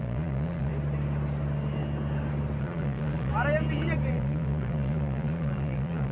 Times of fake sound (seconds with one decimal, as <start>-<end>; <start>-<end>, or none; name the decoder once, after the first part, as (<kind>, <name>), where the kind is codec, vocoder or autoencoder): 0.0-0.7 (vocoder, Vocos); 2.6-3.3; 4.1-6.1